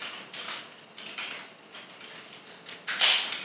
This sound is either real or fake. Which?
real